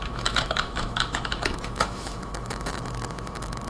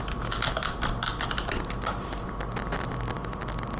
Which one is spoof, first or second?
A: first